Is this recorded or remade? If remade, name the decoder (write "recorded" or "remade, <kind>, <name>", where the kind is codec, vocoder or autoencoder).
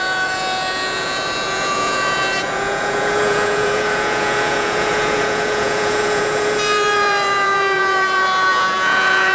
remade, vocoder, Vocos